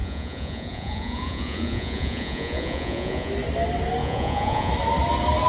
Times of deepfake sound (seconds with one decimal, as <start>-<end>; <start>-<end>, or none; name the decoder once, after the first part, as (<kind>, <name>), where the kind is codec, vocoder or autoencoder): 0.0-3.3 (vocoder, Vocos); 4.0-4.7